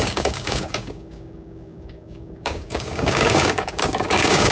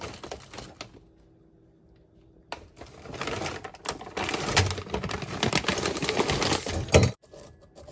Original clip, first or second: second